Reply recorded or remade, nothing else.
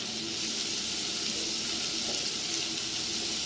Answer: recorded